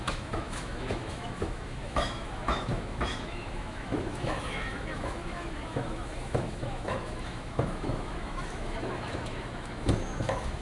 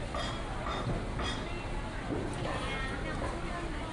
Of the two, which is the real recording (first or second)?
second